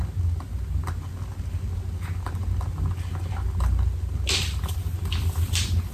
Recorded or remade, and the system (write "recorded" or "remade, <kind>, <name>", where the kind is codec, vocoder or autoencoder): recorded